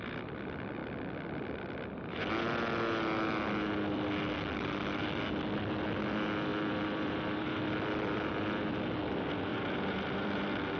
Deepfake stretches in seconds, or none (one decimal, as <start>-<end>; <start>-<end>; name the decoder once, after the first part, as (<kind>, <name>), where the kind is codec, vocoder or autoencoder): 6.5-8.3 (vocoder, BigVGAN v2); 9.5-10.8